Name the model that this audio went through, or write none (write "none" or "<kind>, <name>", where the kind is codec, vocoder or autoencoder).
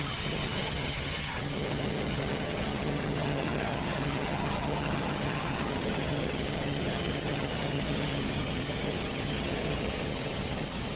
vocoder, HiFi-GAN